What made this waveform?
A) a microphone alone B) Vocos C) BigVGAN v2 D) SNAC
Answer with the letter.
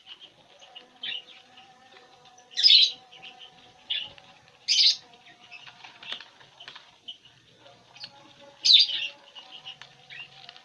A